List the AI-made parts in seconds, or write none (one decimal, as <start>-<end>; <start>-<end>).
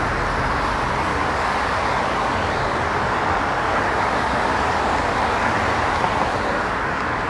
1.1-5.5; 6.3-7.3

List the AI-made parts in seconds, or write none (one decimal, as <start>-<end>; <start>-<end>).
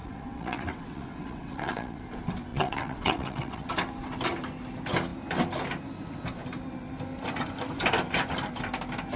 0.0-2.0; 2.5-3.7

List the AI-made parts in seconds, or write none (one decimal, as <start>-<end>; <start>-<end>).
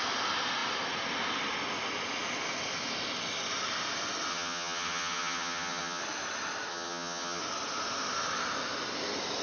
4.3-6.0; 6.7-7.4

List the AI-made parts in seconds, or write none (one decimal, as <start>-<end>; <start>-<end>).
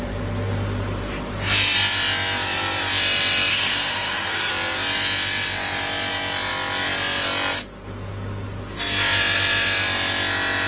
3.5-4.5